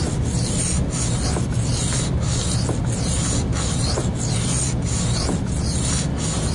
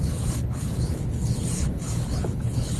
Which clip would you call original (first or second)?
first